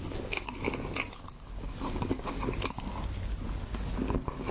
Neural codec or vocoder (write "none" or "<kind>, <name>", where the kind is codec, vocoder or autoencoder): none